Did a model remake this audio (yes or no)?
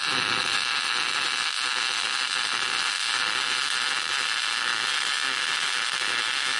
no